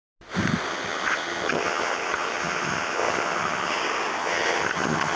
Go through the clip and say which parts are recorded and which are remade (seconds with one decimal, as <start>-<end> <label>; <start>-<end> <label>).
0.0-0.7 recorded; 0.7-3.8 remade; 3.8-4.2 recorded; 4.2-5.2 remade